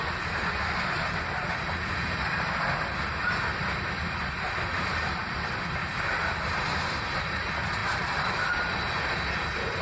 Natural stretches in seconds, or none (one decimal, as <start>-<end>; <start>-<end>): 0.0-7.8; 8.7-9.8